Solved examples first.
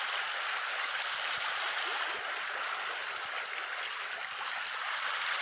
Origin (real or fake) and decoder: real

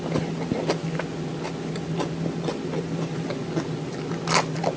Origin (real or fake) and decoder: real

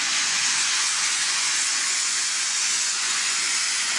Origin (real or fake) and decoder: fake, vocoder, Vocos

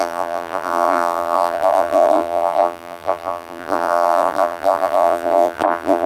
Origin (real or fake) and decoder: fake, vocoder, BigVGAN v2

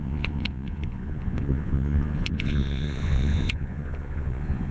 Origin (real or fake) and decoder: fake, vocoder, Vocos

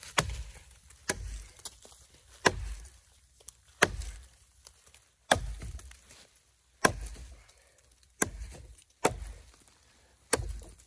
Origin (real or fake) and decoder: real